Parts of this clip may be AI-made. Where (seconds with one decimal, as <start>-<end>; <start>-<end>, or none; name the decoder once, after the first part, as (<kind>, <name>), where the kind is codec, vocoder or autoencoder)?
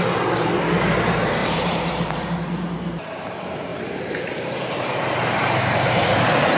1.4-3.1 (vocoder, BigVGAN v2); 3.7-6.1